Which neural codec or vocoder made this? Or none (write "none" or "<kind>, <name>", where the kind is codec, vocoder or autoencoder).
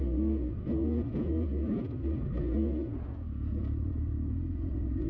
none